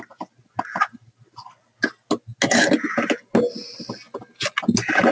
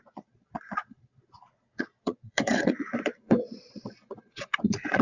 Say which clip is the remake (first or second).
second